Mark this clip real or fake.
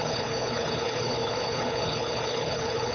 fake